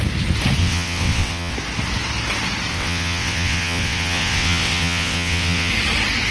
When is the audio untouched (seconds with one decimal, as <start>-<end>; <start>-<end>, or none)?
0.0-0.6; 1.5-2.7; 5.7-6.3